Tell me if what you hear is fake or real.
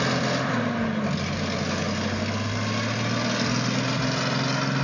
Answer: real